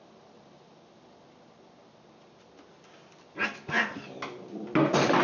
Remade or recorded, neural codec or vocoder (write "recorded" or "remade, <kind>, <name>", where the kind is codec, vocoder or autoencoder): recorded